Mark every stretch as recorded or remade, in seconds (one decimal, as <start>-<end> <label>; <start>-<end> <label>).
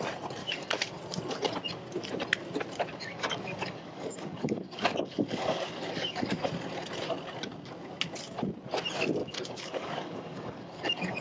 0.0-0.4 recorded; 0.4-1.0 remade; 1.0-2.9 recorded; 2.9-6.5 remade; 6.5-9.2 recorded; 9.2-11.2 remade